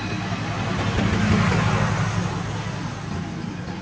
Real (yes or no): yes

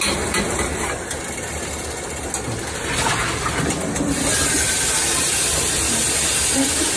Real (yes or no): yes